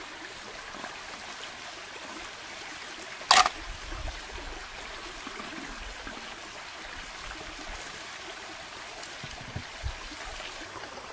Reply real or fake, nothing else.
real